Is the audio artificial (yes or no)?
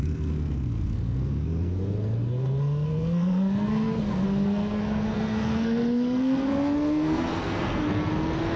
yes